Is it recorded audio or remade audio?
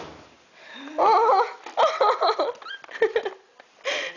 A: recorded